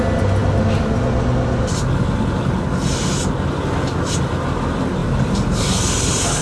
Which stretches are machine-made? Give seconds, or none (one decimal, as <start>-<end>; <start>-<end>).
5.0-6.4